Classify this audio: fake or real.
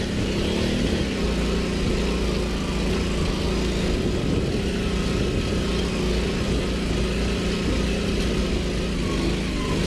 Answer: real